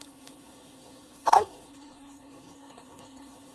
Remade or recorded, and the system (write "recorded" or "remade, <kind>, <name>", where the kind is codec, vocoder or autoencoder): remade, codec, SNAC